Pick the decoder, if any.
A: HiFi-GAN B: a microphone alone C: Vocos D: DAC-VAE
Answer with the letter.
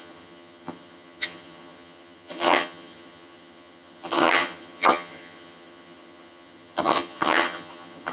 A